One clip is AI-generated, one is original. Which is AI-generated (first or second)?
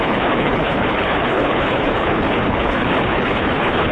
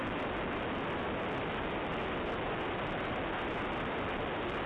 first